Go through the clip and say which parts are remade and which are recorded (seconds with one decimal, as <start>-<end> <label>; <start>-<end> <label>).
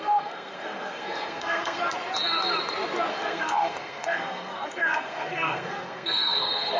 0.0-1.8 remade; 1.8-3.1 recorded; 3.1-6.8 remade